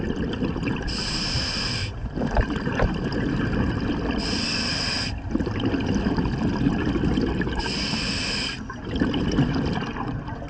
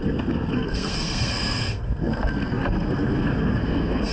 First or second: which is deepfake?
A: second